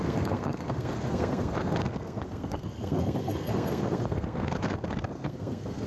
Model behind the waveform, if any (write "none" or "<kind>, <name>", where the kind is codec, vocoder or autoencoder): codec, SNAC